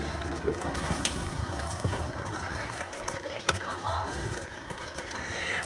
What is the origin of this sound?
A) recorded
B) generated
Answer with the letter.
B